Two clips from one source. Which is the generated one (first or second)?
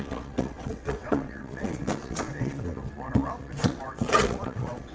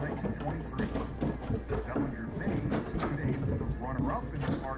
first